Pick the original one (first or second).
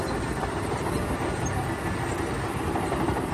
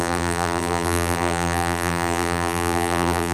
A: first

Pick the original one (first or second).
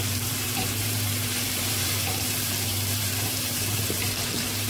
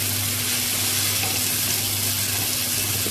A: second